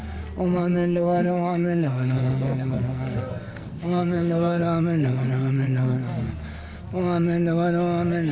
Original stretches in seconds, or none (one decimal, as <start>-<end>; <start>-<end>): 0.0-0.6; 4.6-8.3